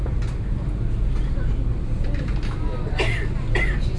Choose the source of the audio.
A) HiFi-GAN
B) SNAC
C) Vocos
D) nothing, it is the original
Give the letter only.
D